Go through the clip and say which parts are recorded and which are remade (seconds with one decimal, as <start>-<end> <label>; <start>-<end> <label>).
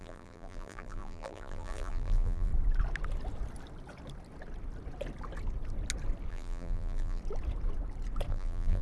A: 0.0-2.5 remade; 2.5-6.3 recorded; 6.3-7.2 remade; 7.2-8.3 recorded; 8.3-8.8 remade